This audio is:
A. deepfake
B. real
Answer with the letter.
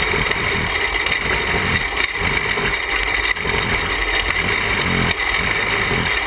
B